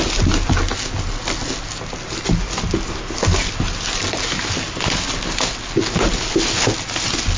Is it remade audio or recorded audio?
recorded